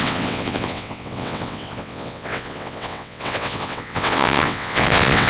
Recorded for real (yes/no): no